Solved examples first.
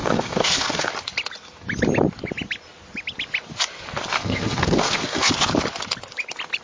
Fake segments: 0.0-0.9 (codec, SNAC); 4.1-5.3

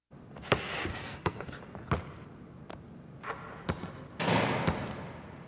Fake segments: 0.9-1.6 (codec, SNAC)

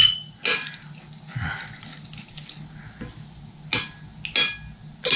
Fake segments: none

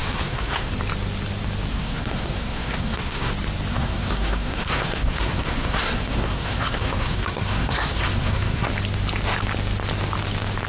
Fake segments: 0.0-0.7 (codec, SNAC); 1.7-3.3; 3.7-8.7

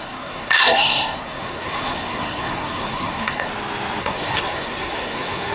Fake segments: 0.0-3.5 (codec, SNAC); 4.0-5.5

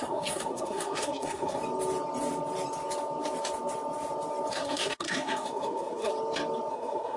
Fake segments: 0.0-1.6 (codec, SNAC); 4.5-6.1; 6.7-7.2

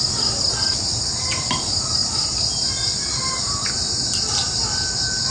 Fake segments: none

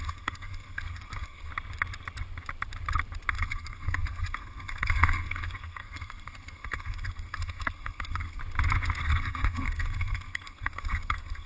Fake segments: 0.0-1.5 (codec, SNAC); 3.3-8.4; 9.0-11.5